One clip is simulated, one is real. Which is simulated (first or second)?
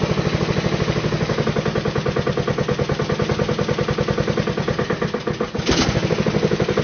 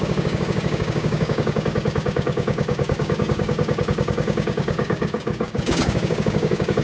second